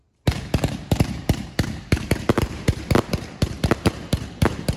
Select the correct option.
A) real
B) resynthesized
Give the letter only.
B